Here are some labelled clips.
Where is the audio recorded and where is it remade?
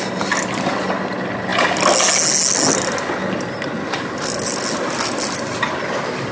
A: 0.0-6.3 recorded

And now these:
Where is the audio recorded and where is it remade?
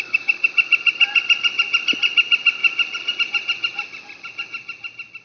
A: 0.0-5.2 recorded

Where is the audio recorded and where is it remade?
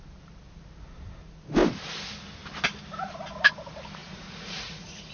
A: 0.0-4.0 recorded; 4.0-5.1 remade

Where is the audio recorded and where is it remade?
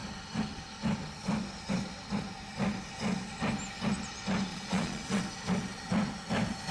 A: 0.0-4.5 recorded; 4.5-5.2 remade; 5.2-6.7 recorded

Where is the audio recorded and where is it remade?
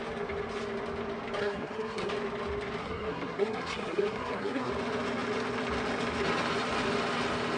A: 0.0-1.4 recorded; 1.4-2.1 remade; 2.1-2.8 recorded; 2.8-4.7 remade; 4.7-7.6 recorded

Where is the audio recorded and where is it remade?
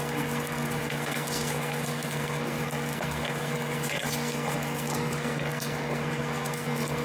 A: 0.0-7.0 remade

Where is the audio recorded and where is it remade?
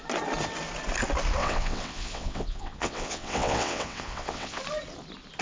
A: 0.0-1.4 recorded; 1.4-4.6 remade; 4.6-5.4 recorded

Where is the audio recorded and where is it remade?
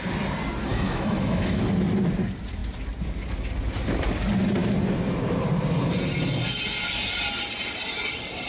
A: 0.0-0.7 recorded; 0.7-1.6 remade; 1.6-8.5 recorded